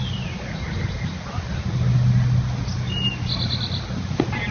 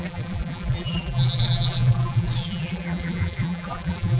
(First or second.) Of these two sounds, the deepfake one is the second